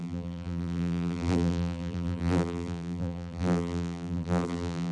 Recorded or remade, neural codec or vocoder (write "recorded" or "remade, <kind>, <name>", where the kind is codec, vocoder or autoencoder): remade, vocoder, BigVGAN v2